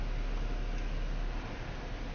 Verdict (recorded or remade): recorded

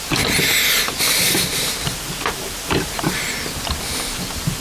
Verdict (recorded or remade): recorded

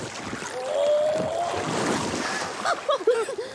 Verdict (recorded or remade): recorded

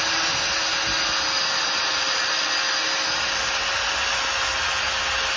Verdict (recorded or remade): recorded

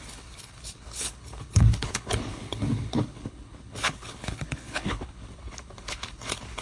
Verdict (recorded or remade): remade